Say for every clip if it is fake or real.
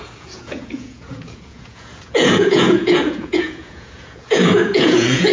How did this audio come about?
fake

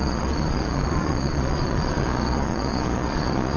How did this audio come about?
fake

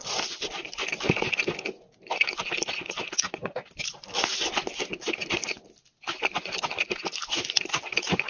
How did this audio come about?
real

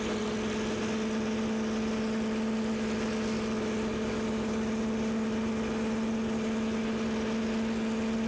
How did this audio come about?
real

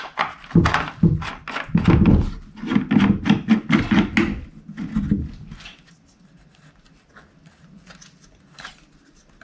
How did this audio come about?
real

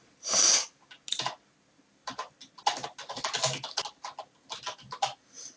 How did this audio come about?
real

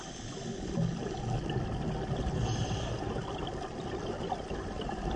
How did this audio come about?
real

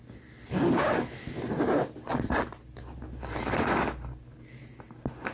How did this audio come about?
real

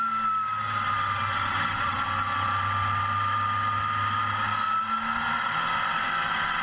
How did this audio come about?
real